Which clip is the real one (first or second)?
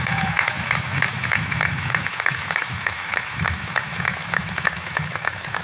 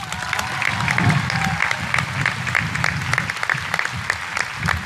second